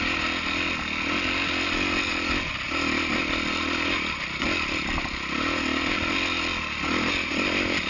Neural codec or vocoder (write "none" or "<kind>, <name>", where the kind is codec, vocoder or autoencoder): none